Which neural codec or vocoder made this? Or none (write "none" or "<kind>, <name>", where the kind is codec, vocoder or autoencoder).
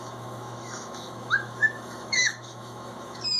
autoencoder, DAC-VAE